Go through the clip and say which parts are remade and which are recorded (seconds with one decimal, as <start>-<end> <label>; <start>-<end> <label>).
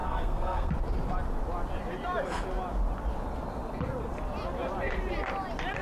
0.0-0.7 remade; 0.7-5.8 recorded